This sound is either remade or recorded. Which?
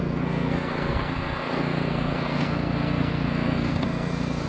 remade